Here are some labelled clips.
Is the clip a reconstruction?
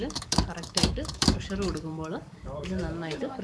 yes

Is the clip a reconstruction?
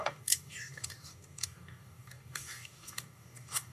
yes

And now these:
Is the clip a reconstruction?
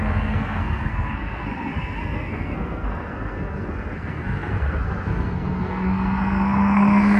yes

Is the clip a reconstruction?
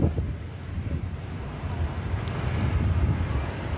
yes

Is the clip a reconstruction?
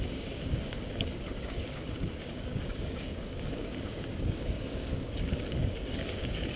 yes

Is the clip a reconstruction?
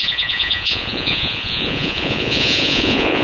yes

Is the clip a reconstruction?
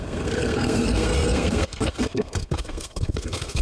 yes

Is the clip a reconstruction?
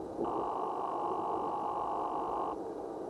no